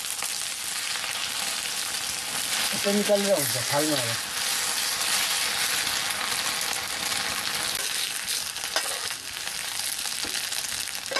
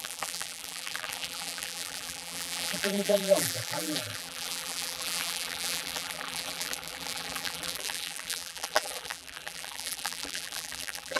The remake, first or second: second